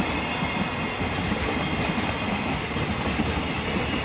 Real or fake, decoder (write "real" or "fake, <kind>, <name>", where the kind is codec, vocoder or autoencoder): real